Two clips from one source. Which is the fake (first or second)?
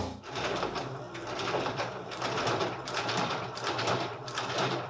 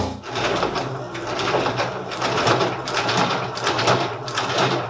first